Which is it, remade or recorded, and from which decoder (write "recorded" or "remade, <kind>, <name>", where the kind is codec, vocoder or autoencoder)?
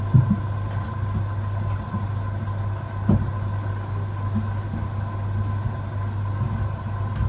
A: recorded